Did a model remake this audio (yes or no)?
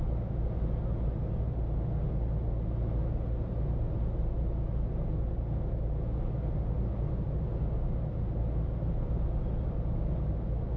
no